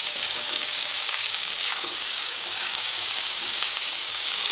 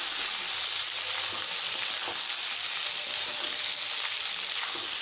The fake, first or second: first